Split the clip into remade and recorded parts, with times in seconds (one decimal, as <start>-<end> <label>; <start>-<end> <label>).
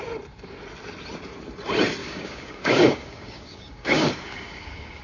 0.0-2.0 recorded; 2.0-5.0 remade